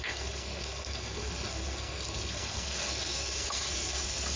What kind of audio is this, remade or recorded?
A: remade